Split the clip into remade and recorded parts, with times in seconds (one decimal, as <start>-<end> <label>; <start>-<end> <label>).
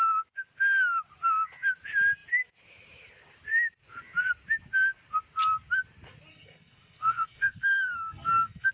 0.0-6.3 recorded; 6.3-8.7 remade